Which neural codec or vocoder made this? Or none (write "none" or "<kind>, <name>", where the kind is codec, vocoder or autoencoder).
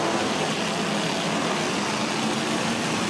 vocoder, BigVGAN v2